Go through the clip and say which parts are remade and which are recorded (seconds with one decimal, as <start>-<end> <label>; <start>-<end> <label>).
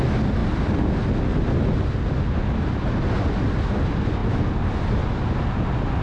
0.0-6.0 recorded